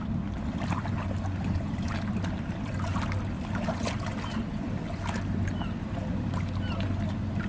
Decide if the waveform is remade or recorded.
recorded